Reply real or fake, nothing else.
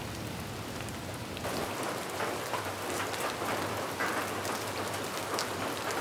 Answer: real